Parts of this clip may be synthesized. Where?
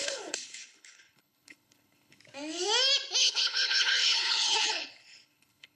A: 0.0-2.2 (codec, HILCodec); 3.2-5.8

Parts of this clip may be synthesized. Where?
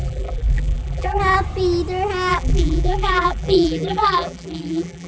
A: 0.0-1.2 (vocoder, BigVGAN v2); 2.3-5.1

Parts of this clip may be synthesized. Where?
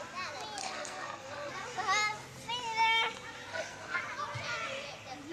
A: 0.6-1.5 (codec, SNAC); 3.5-4.0